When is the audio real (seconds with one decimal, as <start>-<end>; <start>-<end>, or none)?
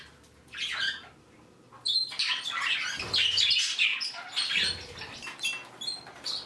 0.0-6.5